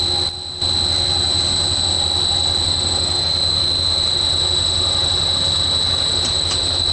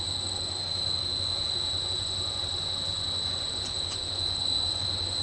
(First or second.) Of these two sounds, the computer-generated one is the second